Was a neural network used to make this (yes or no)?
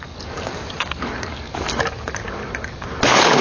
yes